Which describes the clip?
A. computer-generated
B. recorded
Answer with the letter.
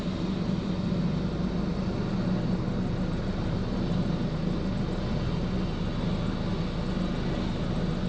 B